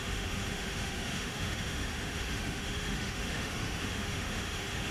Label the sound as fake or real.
fake